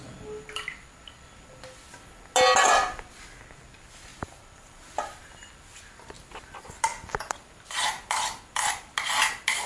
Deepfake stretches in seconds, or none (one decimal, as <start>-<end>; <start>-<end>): 4.1-5.3

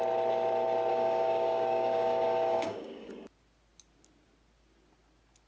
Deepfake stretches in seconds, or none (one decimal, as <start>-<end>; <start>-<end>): 0.9-3.1

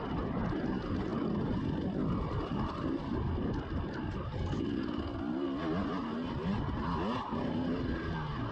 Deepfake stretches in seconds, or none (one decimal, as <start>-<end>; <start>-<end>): none

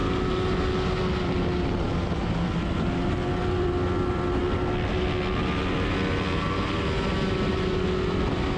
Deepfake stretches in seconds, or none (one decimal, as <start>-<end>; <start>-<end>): none

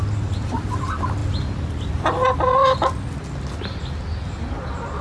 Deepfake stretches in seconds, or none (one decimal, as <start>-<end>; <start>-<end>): none